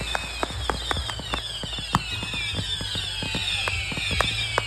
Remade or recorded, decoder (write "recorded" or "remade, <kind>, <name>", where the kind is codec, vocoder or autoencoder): recorded